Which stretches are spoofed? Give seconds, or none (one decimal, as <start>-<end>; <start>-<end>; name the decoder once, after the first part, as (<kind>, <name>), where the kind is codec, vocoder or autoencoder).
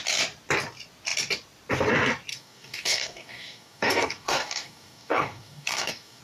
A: 2.3-6.2 (codec, DAC)